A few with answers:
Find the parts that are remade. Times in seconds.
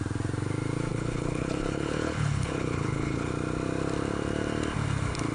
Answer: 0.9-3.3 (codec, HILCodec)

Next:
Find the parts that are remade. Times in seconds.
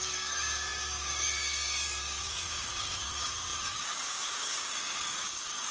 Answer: 0.0-5.7 (codec, DAC)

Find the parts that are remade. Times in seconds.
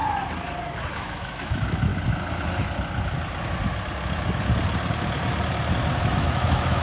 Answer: 0.8-1.9 (autoencoder, DAC-VAE); 6.0-6.8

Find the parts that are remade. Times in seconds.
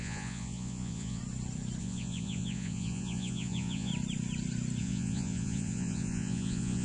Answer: 0.0-1.2 (vocoder, Vocos); 1.8-3.9; 4.8-6.8